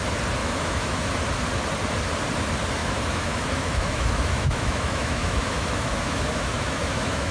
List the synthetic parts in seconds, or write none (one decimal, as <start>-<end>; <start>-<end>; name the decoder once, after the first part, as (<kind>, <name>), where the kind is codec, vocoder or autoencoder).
0.4-1.1 (autoencoder, DAC-VAE); 2.8-7.3